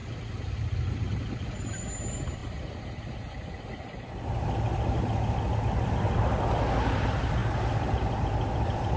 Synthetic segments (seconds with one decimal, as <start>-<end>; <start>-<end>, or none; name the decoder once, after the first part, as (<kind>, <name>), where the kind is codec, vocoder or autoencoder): none